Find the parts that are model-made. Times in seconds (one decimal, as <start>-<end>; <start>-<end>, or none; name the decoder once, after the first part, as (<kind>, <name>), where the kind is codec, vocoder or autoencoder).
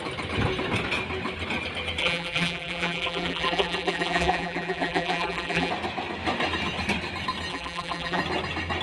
2.0-5.7 (vocoder, BigVGAN v2); 7.5-8.2